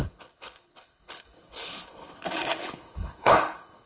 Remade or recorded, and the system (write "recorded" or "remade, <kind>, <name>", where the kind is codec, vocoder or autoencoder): remade, codec, HILCodec